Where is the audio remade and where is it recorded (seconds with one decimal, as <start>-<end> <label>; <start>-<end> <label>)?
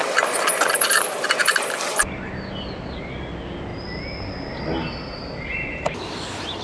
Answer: 0.0-1.4 recorded; 1.4-2.1 remade; 2.1-6.6 recorded